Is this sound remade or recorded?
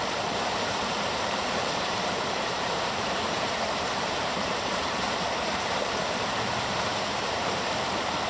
remade